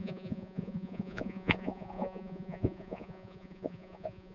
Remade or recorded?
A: remade